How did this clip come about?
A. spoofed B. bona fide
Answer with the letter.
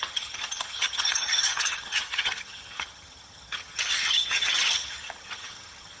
A